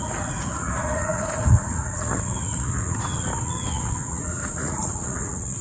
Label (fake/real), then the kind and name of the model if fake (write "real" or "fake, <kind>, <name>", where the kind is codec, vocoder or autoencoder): fake, vocoder, Vocos